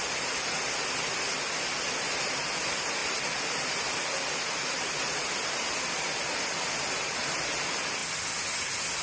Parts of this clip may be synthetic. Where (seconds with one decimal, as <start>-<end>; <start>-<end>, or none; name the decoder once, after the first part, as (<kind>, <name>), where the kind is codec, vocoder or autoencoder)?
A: none